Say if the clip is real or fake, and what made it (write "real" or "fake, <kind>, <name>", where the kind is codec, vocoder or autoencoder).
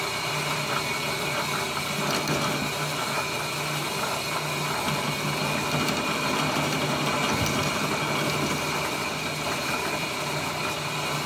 real